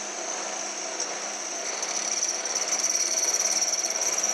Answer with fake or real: real